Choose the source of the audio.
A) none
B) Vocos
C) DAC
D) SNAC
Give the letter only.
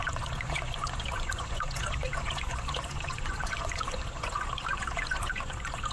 B